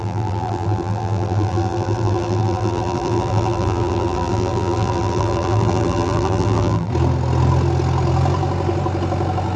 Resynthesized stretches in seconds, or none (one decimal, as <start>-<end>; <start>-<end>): 0.0-6.9